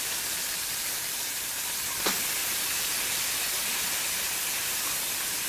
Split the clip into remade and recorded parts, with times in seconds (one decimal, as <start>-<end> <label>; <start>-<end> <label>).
0.0-5.5 recorded